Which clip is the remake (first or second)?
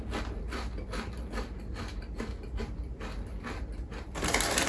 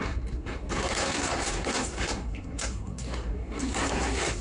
second